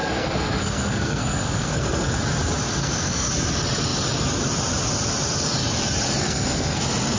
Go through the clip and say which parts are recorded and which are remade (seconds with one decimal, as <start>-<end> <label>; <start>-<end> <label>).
0.0-2.2 remade; 2.2-2.8 recorded; 2.8-3.3 remade; 3.3-6.2 recorded; 6.2-6.8 remade; 6.8-7.2 recorded